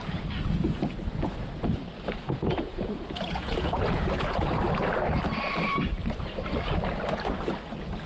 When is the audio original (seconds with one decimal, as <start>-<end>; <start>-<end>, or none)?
0.0-2.2; 4.6-8.1